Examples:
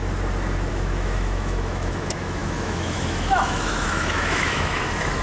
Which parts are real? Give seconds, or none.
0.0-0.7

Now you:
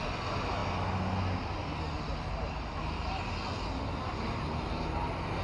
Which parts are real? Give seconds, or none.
0.0-5.4